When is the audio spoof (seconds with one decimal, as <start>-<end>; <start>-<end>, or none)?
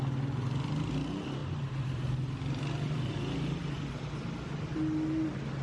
1.4-2.0